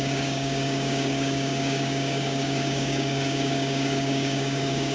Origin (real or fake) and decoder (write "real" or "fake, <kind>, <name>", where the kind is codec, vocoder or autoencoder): fake, codec, DAC